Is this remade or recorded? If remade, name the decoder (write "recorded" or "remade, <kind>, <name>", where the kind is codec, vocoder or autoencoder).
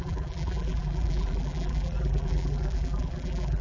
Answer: remade, vocoder, BigVGAN v2